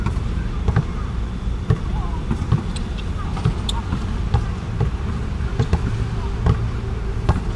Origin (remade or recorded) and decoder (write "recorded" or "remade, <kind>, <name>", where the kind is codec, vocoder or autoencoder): recorded